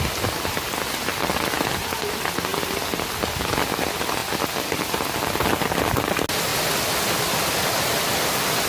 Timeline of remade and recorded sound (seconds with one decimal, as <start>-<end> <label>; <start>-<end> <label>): 0.0-8.7 recorded